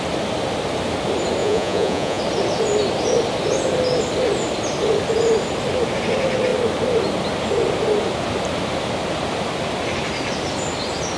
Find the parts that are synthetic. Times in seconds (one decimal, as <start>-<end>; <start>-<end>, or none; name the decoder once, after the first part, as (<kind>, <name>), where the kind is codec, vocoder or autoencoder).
1.4-2.2 (vocoder, Vocos)